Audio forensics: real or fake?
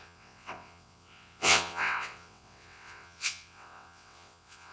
fake